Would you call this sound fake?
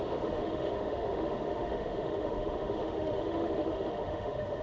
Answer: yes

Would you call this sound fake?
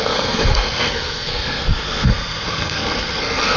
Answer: yes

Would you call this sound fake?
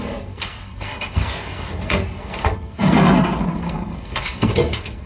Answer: yes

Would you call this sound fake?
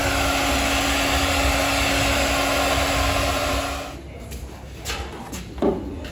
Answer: no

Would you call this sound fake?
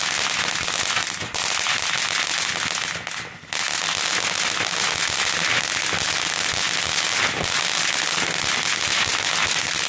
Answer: no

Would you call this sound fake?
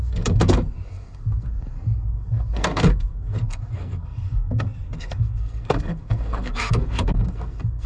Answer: yes